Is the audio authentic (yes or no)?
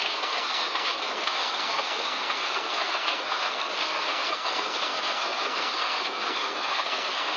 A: no